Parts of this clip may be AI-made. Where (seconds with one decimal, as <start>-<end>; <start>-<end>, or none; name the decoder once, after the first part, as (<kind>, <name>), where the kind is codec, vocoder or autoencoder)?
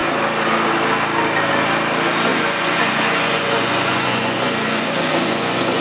2.3-5.8 (vocoder, Vocos)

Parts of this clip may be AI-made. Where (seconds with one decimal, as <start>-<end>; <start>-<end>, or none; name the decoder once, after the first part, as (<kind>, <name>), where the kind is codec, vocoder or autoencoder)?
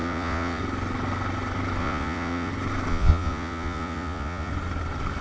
0.0-0.6 (vocoder, Vocos); 1.8-2.5; 2.9-4.5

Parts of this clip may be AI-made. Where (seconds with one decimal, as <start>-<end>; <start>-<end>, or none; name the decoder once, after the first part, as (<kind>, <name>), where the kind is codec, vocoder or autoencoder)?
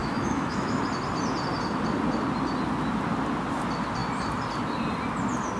0.0-0.8 (autoencoder, DAC-VAE)